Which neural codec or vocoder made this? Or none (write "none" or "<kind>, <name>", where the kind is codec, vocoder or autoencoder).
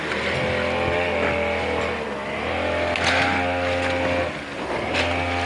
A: none